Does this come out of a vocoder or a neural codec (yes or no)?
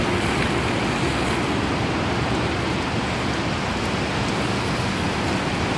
no